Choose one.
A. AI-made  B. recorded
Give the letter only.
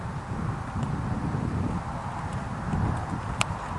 B